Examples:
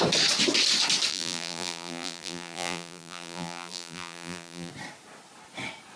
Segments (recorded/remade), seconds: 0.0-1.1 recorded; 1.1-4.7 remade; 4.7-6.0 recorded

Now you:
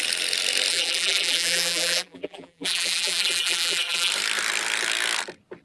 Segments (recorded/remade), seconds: 0.0-0.7 recorded; 0.7-4.1 remade; 4.1-5.6 recorded

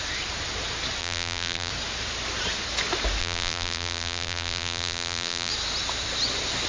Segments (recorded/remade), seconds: 0.0-1.0 recorded; 1.0-1.7 remade; 1.7-3.2 recorded; 3.2-5.5 remade; 5.5-6.7 recorded

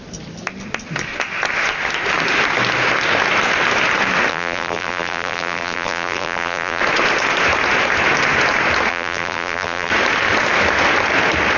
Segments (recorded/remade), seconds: 0.0-4.3 recorded; 4.3-6.8 remade; 6.8-8.9 recorded; 8.9-9.9 remade; 9.9-11.6 recorded

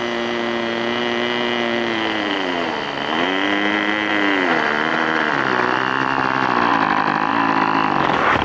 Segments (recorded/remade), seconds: 0.0-1.0 recorded; 1.0-4.1 remade; 4.1-6.7 recorded; 6.7-7.3 remade; 7.3-8.4 recorded

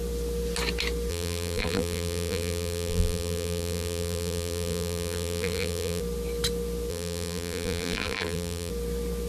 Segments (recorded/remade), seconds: 0.0-1.1 recorded; 1.1-6.0 remade; 6.0-6.9 recorded; 6.9-8.7 remade; 8.7-9.3 recorded

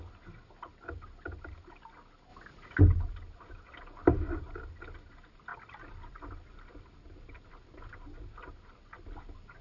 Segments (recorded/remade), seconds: 0.0-4.0 recorded; 4.0-4.6 remade; 4.6-5.5 recorded; 5.5-7.5 remade; 7.5-9.6 recorded

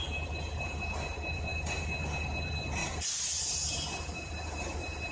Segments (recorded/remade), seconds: 0.0-2.8 recorded; 2.8-5.1 remade